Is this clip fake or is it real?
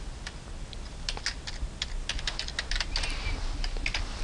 real